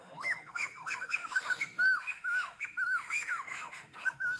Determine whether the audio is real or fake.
fake